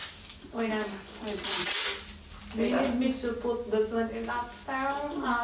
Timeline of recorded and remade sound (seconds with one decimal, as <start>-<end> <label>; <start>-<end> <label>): 0.0-5.4 recorded